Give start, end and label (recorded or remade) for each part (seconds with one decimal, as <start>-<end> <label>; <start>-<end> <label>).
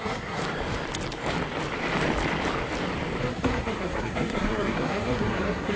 0.0-0.4 remade; 0.4-3.2 recorded; 3.2-5.8 remade